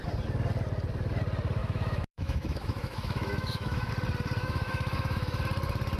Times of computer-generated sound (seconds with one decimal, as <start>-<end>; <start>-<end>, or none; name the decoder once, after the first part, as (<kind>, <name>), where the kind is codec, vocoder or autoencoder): 1.6-3.9 (autoencoder, DAC-VAE); 4.4-5.4